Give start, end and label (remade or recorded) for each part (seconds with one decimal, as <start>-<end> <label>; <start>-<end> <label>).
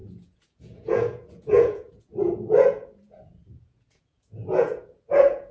0.0-5.5 remade